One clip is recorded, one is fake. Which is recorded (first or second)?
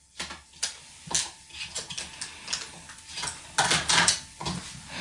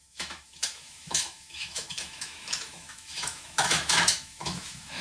first